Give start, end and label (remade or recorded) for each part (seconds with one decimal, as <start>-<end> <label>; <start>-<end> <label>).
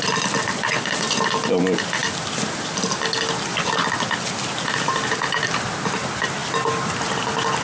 0.0-7.6 recorded